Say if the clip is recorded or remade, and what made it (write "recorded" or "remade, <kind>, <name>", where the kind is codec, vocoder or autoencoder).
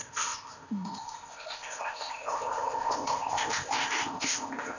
remade, codec, ZipCodec